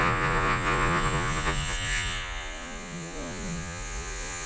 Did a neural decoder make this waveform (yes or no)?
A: yes